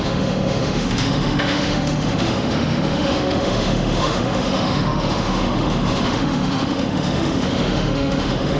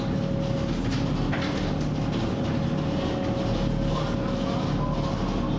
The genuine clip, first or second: second